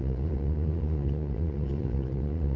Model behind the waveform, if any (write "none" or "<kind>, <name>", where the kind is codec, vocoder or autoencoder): vocoder, Vocos